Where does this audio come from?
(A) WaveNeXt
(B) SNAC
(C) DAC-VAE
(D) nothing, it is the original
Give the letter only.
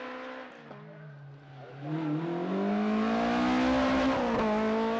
D